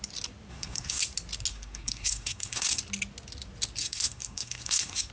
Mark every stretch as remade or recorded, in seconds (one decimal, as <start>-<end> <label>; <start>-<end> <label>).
0.0-0.5 recorded; 0.5-1.0 remade; 1.0-1.5 recorded; 1.5-2.8 remade; 2.8-3.8 recorded; 3.8-5.1 remade